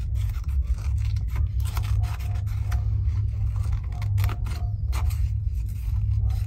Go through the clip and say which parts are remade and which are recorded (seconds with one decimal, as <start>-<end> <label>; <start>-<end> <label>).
0.0-6.5 recorded